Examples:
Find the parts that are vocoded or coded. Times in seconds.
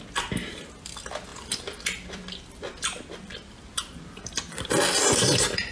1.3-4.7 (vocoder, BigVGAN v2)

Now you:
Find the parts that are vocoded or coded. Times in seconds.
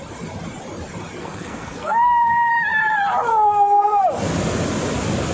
1.2-2.5 (codec, SNAC); 3.3-4.0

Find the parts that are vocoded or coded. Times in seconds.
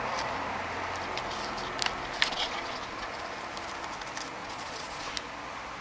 2.3-3.1 (vocoder, Vocos); 4.4-5.1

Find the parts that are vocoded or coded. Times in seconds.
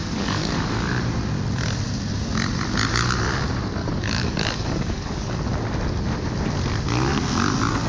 0.0-0.9 (codec, DAC); 3.8-5.3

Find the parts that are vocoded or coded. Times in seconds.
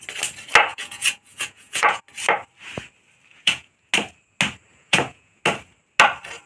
0.7-2.0 (vocoder, Vocos); 3.3-3.9; 4.7-5.4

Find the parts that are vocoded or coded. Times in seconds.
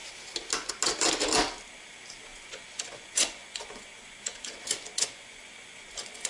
2.3-6.3 (vocoder, Vocos)